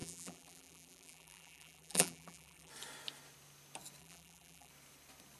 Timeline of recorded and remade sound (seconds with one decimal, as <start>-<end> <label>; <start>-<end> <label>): 0.0-2.7 remade; 2.7-4.0 recorded; 4.0-4.7 remade; 4.7-5.4 recorded